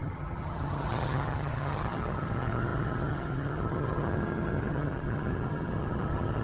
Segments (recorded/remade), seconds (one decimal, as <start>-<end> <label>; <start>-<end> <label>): 0.0-6.4 remade